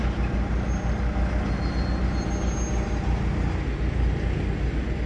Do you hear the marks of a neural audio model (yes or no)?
no